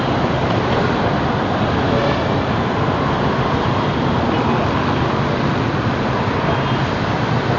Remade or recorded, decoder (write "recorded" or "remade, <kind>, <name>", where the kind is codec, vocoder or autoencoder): recorded